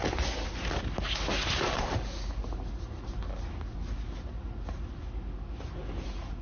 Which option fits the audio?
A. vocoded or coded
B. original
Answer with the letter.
B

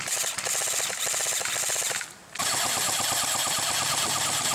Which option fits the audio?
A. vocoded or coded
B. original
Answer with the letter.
B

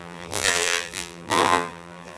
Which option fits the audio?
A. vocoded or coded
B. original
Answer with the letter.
A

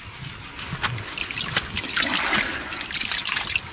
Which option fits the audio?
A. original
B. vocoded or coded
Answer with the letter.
A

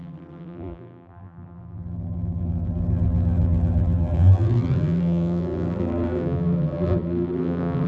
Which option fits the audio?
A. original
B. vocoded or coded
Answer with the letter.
B